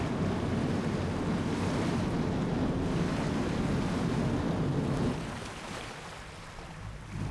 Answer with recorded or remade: recorded